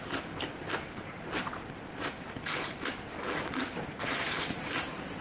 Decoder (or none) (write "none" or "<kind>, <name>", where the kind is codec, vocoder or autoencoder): none